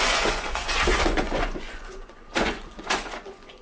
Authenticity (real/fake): fake